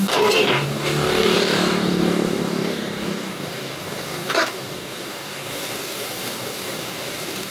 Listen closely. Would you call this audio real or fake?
fake